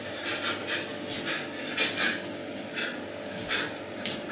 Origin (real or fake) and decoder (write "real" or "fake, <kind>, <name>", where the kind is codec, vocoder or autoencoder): real